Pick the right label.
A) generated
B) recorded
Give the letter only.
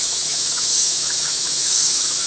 A